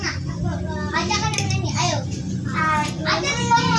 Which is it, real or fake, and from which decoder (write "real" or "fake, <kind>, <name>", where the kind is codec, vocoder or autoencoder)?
real